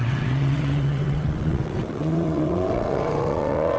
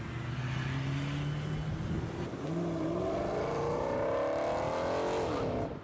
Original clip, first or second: second